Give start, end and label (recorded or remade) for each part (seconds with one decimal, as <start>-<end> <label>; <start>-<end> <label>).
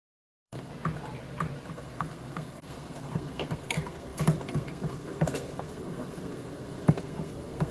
0.0-0.7 remade; 0.7-1.7 recorded; 1.7-7.7 remade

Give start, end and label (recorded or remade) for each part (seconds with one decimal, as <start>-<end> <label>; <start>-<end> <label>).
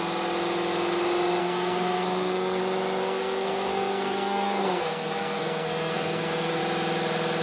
0.0-1.4 recorded; 1.4-2.6 remade; 2.6-3.0 recorded; 3.0-6.6 remade; 6.6-7.4 recorded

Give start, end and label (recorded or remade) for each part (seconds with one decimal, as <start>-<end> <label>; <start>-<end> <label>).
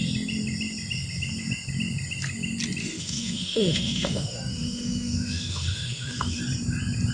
0.0-2.8 recorded; 2.8-6.4 remade; 6.4-7.1 recorded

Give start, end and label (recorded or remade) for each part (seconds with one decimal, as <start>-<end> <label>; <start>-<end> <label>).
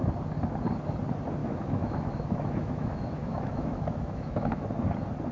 0.0-1.4 recorded; 1.4-4.6 remade; 4.6-5.3 recorded